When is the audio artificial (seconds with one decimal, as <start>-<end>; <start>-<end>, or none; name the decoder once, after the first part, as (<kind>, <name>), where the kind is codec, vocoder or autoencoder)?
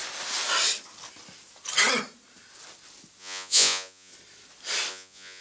3.2-4.1 (vocoder, Vocos); 4.9-5.4